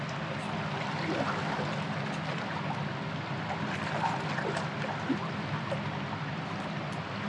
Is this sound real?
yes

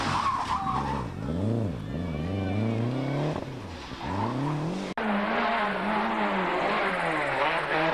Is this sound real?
yes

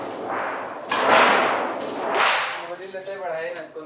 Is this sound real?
yes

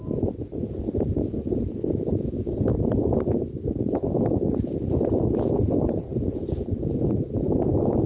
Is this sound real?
yes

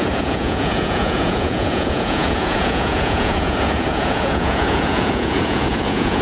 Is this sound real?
no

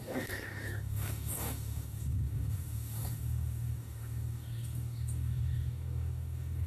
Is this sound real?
no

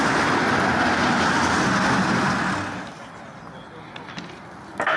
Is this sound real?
yes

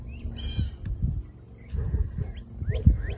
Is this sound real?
yes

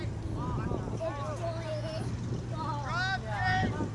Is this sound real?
yes